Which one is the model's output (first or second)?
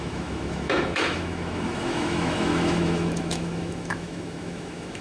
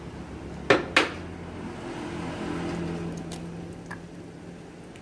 first